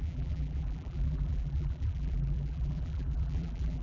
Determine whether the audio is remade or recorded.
remade